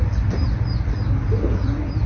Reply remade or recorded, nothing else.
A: recorded